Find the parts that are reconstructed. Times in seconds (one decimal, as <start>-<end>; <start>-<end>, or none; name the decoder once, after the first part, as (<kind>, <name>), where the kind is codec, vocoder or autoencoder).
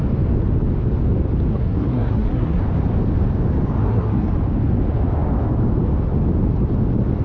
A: 1.5-2.6 (codec, SNAC); 3.8-4.3